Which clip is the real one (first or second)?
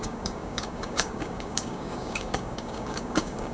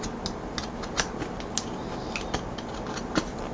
second